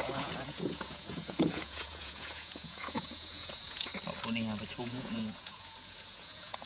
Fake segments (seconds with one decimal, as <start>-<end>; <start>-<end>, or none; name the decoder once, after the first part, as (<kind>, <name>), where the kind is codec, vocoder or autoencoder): 0.0-3.9 (vocoder, Vocos); 4.8-6.7